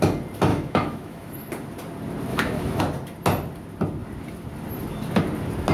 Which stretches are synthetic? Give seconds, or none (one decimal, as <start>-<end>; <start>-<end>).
0.5-1.5; 2.3-2.8